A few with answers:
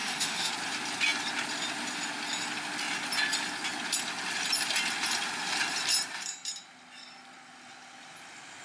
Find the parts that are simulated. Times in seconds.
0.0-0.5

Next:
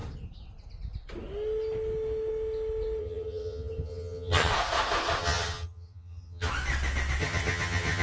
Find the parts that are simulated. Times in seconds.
3.0-4.5; 5.2-6.5; 7.2-8.0

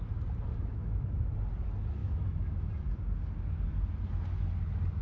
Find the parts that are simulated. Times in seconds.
0.5-1.3; 2.0-2.7